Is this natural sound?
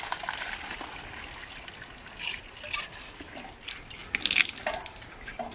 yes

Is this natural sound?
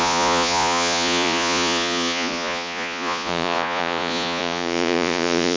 no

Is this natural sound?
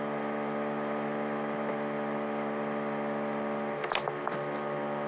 yes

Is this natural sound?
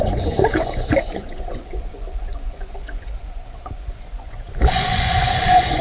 no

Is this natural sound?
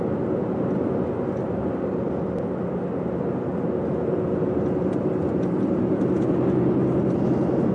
yes